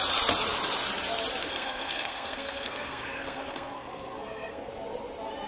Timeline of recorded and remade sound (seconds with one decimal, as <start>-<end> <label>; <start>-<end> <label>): 0.0-1.4 recorded; 1.4-4.7 remade; 4.7-5.5 recorded

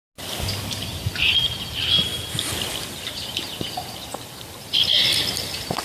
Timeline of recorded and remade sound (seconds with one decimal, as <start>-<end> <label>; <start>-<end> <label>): 0.0-5.8 recorded

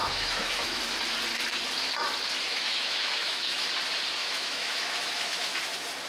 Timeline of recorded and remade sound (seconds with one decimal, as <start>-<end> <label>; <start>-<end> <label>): 0.0-0.8 remade; 0.8-2.5 recorded; 2.5-3.7 remade; 3.7-4.2 recorded; 4.2-5.6 remade; 5.6-6.1 recorded

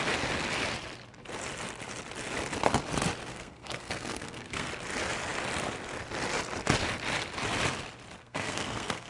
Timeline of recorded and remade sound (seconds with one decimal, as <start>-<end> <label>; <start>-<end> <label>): 0.0-3.3 recorded; 3.3-4.7 remade; 4.7-8.2 recorded; 8.2-9.1 remade

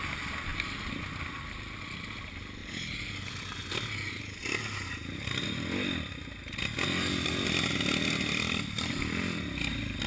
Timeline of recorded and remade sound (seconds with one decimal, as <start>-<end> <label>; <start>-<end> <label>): 0.0-10.1 recorded

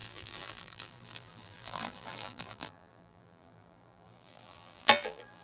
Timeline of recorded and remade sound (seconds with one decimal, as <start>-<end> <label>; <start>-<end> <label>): 0.0-5.4 remade

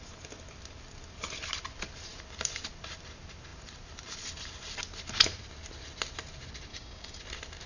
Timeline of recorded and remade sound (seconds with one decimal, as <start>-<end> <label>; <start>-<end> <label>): 0.0-6.7 recorded; 6.7-7.2 remade; 7.2-7.7 recorded